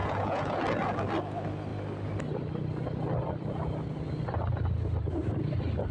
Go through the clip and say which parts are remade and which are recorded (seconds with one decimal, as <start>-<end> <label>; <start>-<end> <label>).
0.0-0.6 remade; 0.6-5.9 recorded